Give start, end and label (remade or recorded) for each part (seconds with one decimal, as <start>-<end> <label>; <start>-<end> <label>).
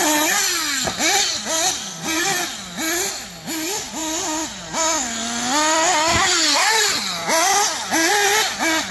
0.0-1.8 recorded; 1.8-2.4 remade; 2.4-8.9 recorded